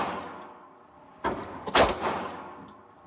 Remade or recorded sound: recorded